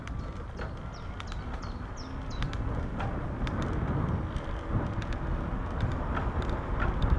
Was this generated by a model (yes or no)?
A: no